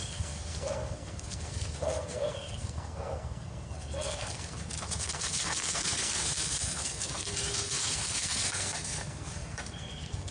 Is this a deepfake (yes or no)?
yes